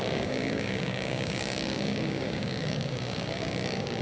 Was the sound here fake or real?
fake